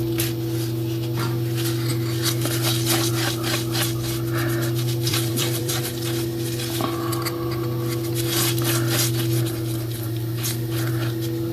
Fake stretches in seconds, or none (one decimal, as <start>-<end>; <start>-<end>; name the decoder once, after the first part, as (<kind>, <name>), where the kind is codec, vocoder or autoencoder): 5.1-5.8 (vocoder, BigVGAN v2)